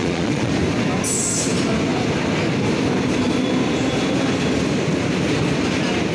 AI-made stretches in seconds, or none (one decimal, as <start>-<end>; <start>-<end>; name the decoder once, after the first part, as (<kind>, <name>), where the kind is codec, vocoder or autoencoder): 0.0-0.5 (vocoder, Vocos)